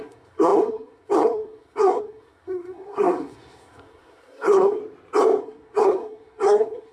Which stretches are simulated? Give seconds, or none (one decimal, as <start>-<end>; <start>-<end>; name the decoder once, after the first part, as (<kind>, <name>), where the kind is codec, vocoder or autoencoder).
0.0-4.8 (codec, SNAC); 5.4-6.9